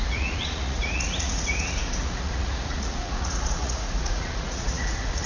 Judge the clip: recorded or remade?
remade